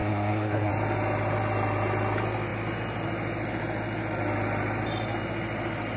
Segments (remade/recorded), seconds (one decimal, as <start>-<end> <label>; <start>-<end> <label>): 0.0-0.7 remade; 0.7-6.0 recorded